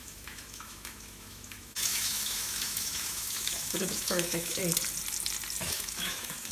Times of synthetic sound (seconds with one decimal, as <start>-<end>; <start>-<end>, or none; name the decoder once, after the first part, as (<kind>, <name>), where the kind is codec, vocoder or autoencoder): 0.0-4.6 (autoencoder, DAC-VAE); 5.6-6.5